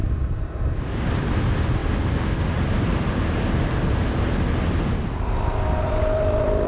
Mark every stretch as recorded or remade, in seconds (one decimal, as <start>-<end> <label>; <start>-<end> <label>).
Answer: 0.0-1.1 recorded; 1.1-1.8 remade; 1.8-5.8 recorded; 5.8-6.7 remade